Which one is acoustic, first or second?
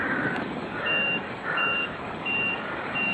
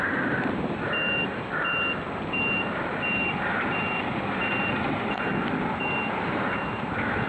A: second